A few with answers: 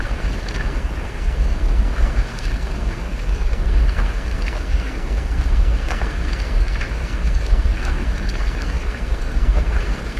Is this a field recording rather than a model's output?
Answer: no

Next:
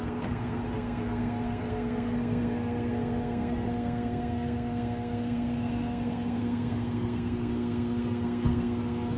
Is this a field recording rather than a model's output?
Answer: no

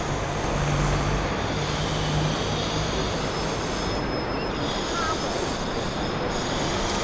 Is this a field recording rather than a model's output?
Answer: yes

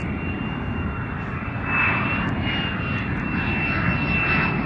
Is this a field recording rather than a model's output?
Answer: yes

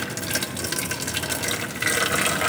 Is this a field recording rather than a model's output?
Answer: yes